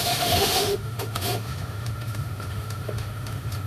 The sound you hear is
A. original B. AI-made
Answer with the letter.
B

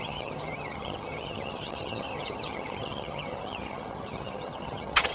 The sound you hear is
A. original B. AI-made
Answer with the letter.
B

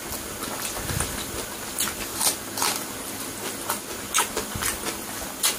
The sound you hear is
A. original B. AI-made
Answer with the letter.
A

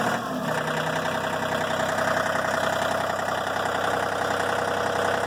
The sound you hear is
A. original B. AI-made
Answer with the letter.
A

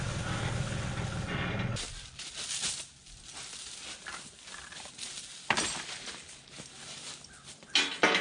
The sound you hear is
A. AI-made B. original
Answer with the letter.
B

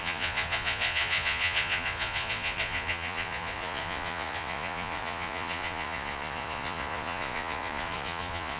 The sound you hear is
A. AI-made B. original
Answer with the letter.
A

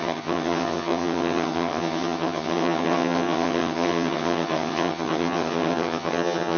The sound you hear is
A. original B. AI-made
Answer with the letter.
B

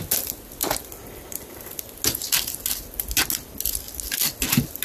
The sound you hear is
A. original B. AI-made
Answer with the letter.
A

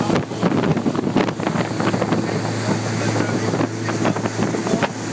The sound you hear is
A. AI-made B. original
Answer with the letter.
B